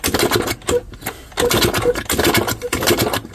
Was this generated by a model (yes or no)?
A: no